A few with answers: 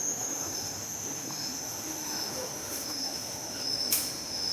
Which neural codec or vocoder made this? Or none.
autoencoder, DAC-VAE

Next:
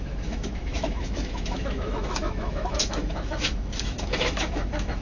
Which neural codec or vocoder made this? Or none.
autoencoder, DAC-VAE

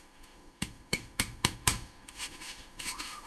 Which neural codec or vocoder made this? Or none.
autoencoder, DAC-VAE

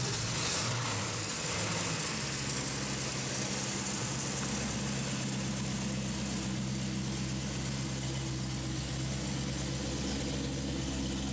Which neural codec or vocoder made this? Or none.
none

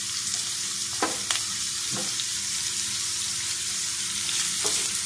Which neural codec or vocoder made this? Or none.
none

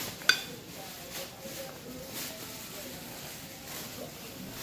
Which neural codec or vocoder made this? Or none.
none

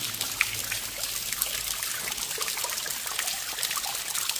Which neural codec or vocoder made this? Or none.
none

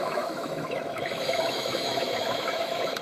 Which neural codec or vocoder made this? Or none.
autoencoder, DAC-VAE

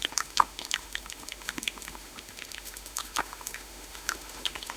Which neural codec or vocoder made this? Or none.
autoencoder, DAC-VAE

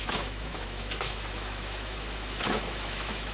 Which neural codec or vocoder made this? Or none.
autoencoder, DAC-VAE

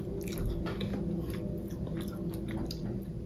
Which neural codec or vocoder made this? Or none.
none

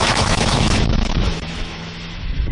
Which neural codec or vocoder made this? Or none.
autoencoder, DAC-VAE